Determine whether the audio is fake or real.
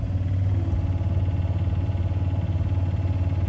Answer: real